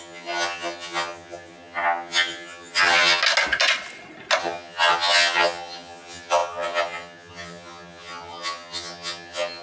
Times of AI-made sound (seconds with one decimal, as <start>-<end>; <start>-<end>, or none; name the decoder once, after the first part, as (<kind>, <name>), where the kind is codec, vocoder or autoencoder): 0.0-3.2 (vocoder, HiFi-GAN); 4.4-9.6